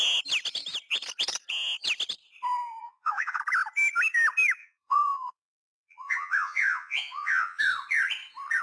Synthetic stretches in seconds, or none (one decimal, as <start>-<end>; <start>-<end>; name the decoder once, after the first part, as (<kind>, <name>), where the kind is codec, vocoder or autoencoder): 2.8-3.4 (vocoder, Vocos); 4.6-7.6